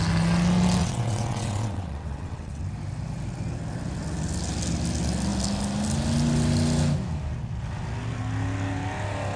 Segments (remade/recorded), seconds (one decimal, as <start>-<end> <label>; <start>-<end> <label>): 0.0-0.8 recorded; 0.8-2.6 remade; 2.6-9.4 recorded